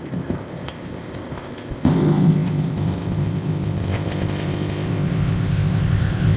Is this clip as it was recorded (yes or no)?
no